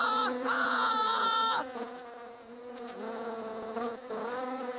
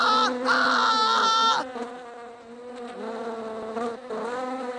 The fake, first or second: first